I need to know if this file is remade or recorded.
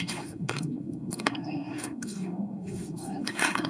remade